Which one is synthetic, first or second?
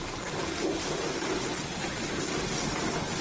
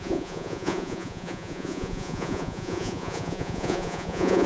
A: second